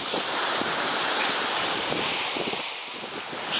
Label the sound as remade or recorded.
recorded